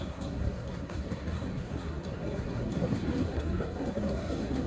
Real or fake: fake